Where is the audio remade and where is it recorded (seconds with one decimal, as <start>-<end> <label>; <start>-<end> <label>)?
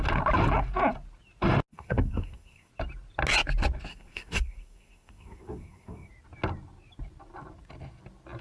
0.0-1.7 recorded; 1.7-2.7 remade; 2.7-3.9 recorded; 3.9-6.1 remade; 6.1-8.4 recorded